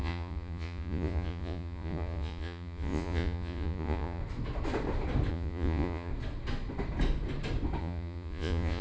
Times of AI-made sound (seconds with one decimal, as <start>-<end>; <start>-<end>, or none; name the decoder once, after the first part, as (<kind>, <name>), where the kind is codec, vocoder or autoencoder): 0.0-4.2 (vocoder, Vocos); 5.3-6.1; 7.8-8.8